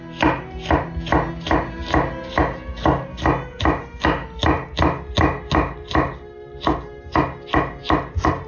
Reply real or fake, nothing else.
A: real